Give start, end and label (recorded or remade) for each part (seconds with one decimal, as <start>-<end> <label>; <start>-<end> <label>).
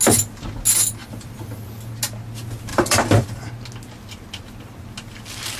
0.0-1.0 recorded; 1.0-1.6 remade; 1.6-2.7 recorded; 2.7-3.5 remade; 3.5-5.6 recorded